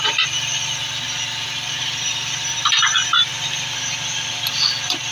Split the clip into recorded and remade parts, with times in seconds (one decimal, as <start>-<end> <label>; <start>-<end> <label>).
0.0-3.3 remade; 3.3-4.5 recorded; 4.5-5.1 remade